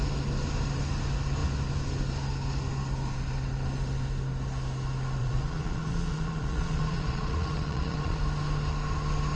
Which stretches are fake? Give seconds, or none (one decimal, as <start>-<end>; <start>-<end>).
5.2-8.2